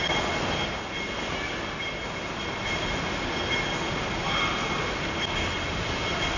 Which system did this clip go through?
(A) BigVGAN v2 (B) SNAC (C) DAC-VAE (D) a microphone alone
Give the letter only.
D